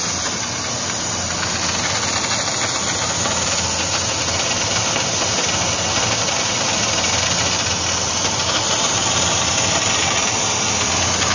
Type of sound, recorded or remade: recorded